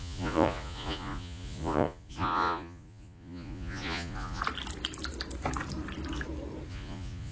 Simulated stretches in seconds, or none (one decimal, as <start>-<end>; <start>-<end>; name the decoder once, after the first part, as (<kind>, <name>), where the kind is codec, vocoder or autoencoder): 0.0-4.4 (vocoder, Vocos); 6.7-7.3